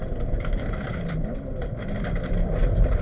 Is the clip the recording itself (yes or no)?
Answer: no